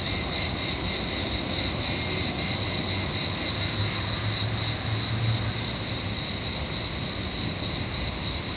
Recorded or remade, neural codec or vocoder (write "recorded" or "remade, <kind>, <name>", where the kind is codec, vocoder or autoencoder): recorded